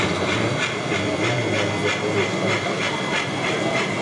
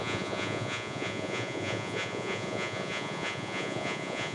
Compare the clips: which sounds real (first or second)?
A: first